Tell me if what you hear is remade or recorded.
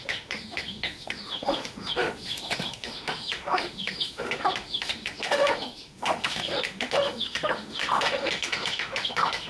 remade